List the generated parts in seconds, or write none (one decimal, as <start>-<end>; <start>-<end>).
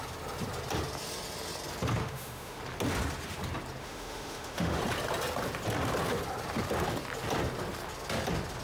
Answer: 2.0-2.6; 3.8-4.8